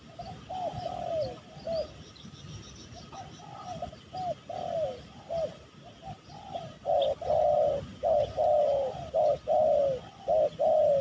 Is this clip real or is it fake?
real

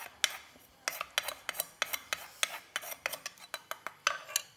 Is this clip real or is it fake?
real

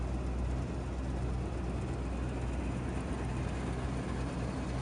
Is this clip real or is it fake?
real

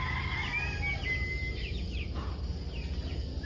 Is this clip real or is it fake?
real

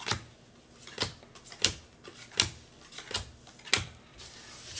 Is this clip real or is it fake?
real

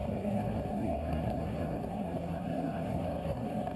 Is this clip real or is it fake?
fake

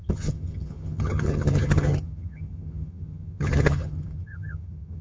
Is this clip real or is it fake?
fake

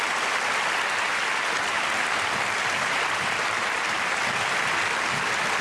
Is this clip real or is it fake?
real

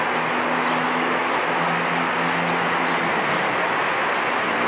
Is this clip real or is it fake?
real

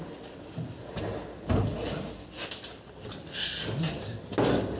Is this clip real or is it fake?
real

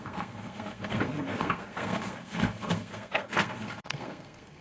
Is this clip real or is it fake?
fake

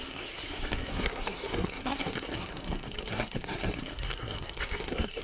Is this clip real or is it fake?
fake